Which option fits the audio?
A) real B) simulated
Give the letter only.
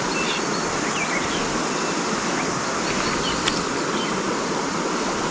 A